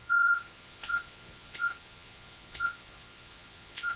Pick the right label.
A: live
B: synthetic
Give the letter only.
B